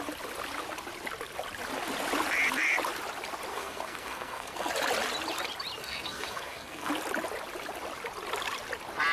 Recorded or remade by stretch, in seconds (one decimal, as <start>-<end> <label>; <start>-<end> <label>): 0.0-3.5 recorded; 3.5-4.7 remade; 4.7-5.8 recorded; 5.8-6.9 remade; 6.9-9.1 recorded